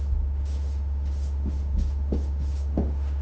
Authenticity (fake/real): fake